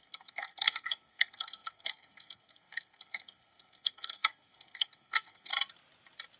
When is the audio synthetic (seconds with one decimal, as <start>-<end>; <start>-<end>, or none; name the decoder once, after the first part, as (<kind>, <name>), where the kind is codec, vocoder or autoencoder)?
0.0-5.5 (codec, SNAC)